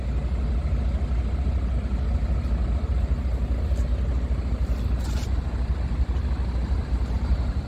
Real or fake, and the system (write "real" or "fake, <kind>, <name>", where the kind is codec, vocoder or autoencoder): real